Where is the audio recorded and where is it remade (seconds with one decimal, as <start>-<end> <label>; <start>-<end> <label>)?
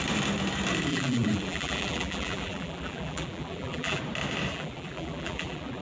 0.0-0.9 recorded; 0.9-4.0 remade; 4.0-4.5 recorded; 4.5-5.8 remade